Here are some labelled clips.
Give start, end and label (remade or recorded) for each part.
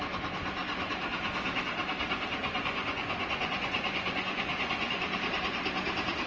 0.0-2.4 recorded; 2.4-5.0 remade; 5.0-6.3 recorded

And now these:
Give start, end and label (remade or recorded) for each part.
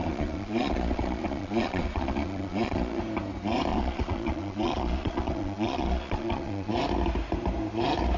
0.0-3.0 remade; 3.0-3.7 recorded; 3.7-6.7 remade; 6.7-8.2 recorded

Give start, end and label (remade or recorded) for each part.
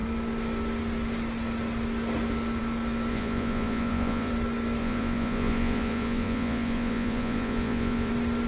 0.0-3.1 recorded; 3.1-4.3 remade; 4.3-4.8 recorded; 4.8-8.1 remade; 8.1-8.5 recorded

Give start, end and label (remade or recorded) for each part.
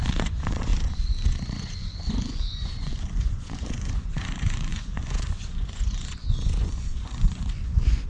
0.0-8.1 remade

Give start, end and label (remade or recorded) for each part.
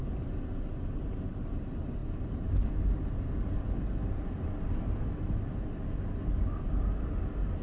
0.0-7.6 recorded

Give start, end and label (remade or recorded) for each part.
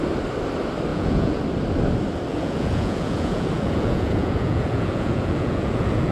0.0-0.9 recorded; 0.9-1.4 remade; 1.4-2.3 recorded; 2.3-6.1 remade